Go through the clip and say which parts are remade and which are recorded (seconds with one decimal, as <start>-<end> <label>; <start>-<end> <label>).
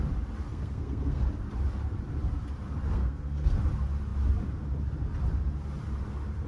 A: 0.0-0.5 recorded; 0.5-1.2 remade; 1.2-2.9 recorded; 2.9-3.6 remade; 3.6-6.5 recorded